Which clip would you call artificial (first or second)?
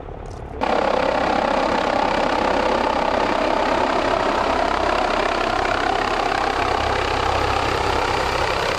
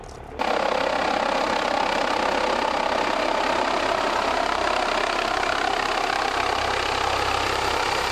first